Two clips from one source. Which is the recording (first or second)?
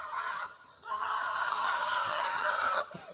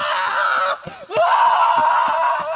second